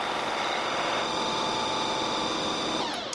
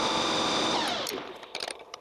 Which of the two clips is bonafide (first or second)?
first